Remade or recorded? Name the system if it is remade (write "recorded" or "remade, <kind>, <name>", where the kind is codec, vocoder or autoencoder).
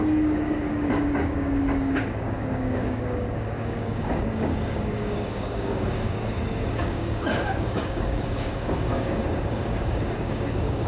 remade, codec, DAC